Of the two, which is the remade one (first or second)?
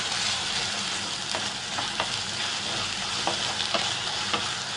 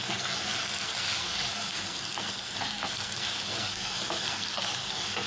second